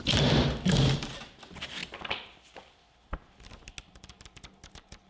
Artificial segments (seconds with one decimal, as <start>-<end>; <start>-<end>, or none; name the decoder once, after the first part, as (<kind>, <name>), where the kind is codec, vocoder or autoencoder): none